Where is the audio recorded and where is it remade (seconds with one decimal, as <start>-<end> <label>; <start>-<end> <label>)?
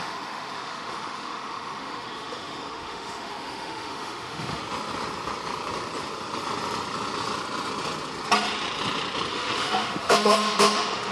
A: 0.0-4.6 remade; 4.6-9.3 recorded; 9.3-11.1 remade